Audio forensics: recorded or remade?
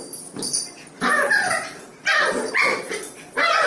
recorded